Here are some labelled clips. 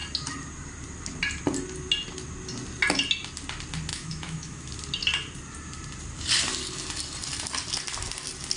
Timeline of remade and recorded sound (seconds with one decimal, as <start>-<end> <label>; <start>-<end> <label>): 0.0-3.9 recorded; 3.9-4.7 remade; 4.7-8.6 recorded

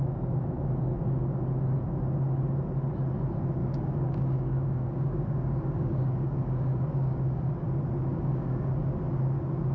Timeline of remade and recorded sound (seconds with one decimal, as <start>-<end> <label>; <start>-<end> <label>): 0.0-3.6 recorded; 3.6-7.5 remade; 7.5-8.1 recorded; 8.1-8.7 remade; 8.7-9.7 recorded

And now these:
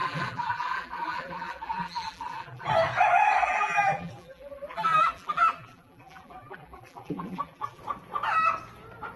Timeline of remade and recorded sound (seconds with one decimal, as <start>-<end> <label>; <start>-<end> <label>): 0.0-2.7 remade; 2.7-3.4 recorded; 3.4-7.8 remade; 7.8-9.2 recorded

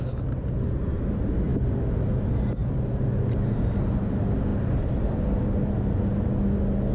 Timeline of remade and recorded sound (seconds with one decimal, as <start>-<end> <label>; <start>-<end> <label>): 0.0-2.6 recorded; 2.6-4.1 remade; 4.1-6.9 recorded